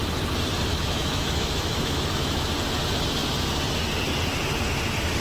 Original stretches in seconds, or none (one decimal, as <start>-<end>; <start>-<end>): 0.0-0.7; 2.5-5.2